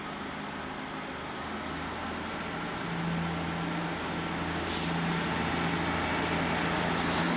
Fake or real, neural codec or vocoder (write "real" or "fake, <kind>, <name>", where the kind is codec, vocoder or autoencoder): real